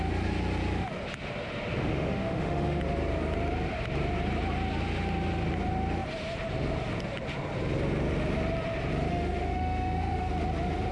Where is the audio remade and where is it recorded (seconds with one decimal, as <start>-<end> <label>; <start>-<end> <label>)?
0.0-1.8 recorded; 1.8-2.8 remade; 2.8-9.1 recorded; 9.1-10.3 remade; 10.3-10.9 recorded